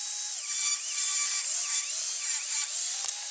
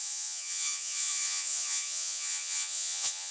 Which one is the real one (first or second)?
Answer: first